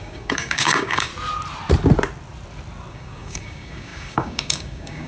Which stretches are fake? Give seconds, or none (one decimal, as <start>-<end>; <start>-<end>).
0.0-1.1; 2.9-5.1